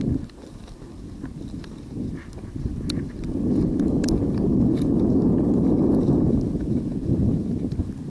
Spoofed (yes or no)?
no